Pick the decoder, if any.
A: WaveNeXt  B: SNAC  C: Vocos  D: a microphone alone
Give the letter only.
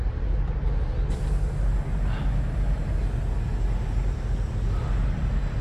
D